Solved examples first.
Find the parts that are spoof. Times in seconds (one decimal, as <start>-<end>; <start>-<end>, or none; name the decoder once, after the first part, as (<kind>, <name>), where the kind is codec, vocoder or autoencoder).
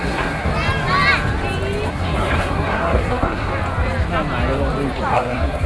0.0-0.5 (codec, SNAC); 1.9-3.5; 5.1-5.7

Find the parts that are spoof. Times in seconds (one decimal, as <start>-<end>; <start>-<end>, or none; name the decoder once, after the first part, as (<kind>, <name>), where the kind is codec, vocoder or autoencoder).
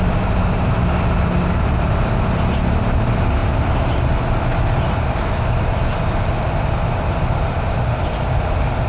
none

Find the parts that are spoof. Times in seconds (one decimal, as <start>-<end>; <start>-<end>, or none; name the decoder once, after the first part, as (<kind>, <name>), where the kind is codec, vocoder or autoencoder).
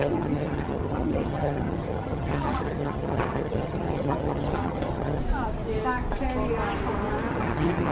0.0-5.2 (vocoder, HiFi-GAN); 7.3-7.9